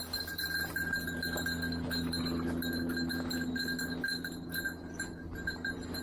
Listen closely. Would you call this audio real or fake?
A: real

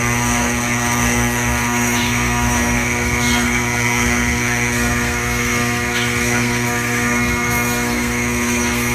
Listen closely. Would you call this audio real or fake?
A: fake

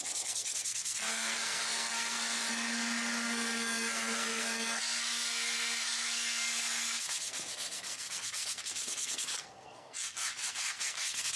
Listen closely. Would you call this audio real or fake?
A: fake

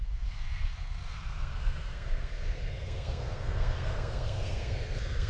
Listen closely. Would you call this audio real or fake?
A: fake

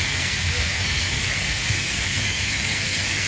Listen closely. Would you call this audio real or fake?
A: fake